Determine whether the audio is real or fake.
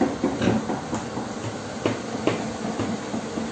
real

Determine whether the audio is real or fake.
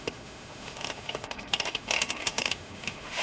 fake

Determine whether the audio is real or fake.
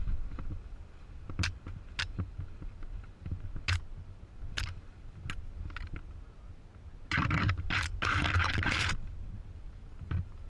real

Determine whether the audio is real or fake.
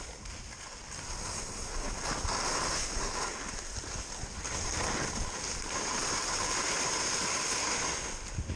real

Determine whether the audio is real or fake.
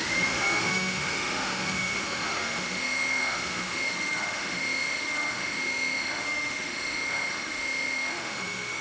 fake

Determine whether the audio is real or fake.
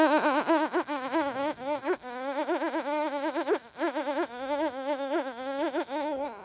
fake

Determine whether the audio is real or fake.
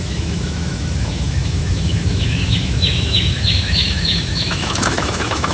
fake